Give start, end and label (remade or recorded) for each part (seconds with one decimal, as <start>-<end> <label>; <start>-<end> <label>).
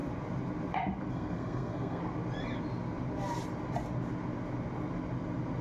0.0-1.1 recorded; 1.1-2.0 remade; 2.0-5.6 recorded